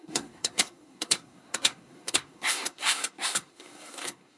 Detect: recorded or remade remade